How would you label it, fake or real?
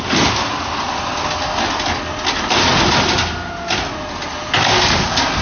real